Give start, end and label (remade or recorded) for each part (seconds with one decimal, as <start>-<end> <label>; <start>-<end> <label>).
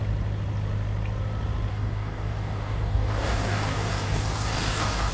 0.0-1.7 recorded; 1.7-5.1 remade